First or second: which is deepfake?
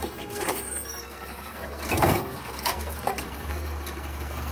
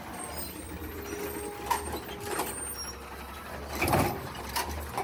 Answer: first